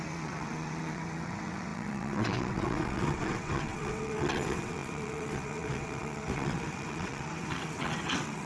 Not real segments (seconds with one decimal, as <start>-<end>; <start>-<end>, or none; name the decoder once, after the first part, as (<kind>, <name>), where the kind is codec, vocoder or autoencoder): 0.0-8.5 (vocoder, WaveNeXt)